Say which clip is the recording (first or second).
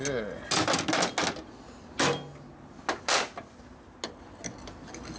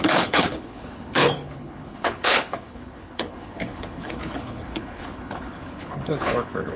first